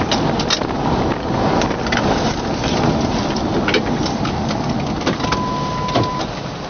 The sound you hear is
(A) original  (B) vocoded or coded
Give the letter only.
A